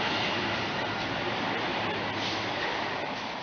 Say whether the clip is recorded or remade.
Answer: recorded